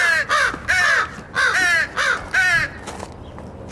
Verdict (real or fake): real